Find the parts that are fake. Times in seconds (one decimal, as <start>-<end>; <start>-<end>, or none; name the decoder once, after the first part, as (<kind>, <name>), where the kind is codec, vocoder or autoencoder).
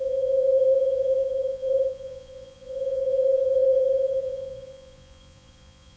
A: 0.0-6.0 (vocoder, Vocos)